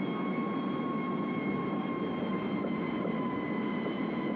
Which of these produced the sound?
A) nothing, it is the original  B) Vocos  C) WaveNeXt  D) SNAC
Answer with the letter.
A